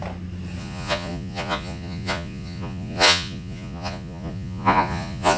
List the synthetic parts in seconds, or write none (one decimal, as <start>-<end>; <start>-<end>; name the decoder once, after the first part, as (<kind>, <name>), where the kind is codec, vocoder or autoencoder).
0.6-5.4 (vocoder, Vocos)